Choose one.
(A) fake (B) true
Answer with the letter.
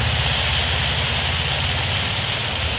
B